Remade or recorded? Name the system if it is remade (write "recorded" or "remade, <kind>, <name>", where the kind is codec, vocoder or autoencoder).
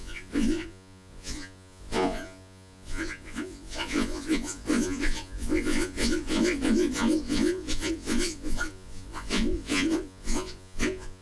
remade, vocoder, Vocos